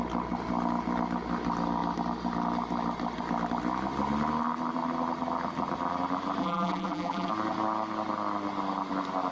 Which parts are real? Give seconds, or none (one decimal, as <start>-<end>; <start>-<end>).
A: 0.0-6.4; 7.3-9.3